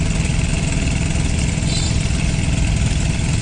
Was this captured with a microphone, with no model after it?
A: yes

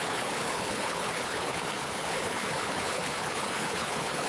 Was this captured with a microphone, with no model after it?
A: no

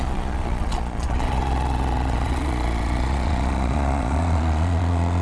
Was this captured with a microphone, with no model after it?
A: no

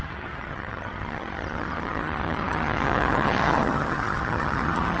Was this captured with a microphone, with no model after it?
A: no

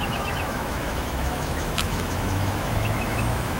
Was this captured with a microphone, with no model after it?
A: no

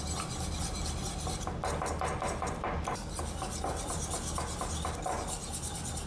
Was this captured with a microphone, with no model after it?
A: yes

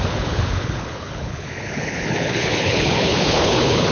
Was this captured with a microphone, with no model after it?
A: no